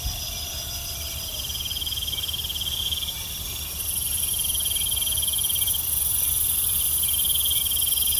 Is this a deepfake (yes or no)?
no